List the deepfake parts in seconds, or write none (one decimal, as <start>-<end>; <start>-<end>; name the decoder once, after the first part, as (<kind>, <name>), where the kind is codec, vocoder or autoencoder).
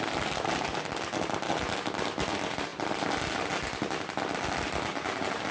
none